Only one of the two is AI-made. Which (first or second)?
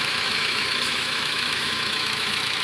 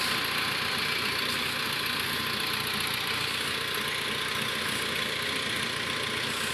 first